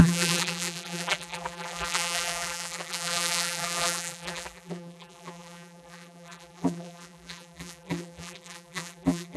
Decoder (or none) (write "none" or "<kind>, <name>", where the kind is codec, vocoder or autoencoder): vocoder, BigVGAN v2